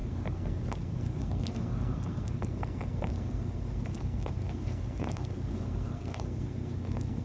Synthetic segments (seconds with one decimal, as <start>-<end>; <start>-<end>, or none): 0.0-7.2